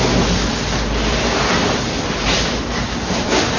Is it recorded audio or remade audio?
recorded